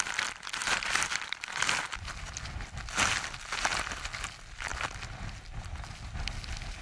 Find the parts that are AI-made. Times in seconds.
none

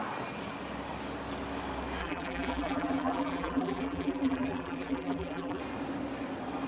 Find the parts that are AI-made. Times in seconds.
2.0-5.6 (vocoder, BigVGAN v2)

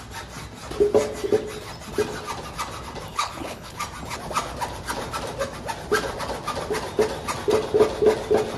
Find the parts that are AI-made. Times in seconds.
3.1-3.8 (codec, HILCodec)

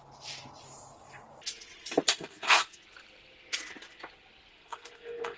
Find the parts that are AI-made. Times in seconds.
2.1-2.8 (codec, SNAC); 4.5-5.4

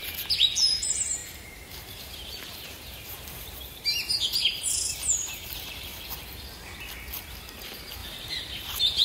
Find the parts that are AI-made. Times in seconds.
0.7-5.9 (vocoder, BigVGAN v2); 7.6-9.0